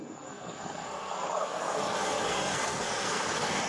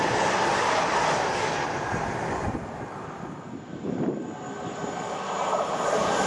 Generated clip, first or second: first